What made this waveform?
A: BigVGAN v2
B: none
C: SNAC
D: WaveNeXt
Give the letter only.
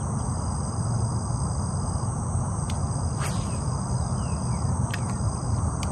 B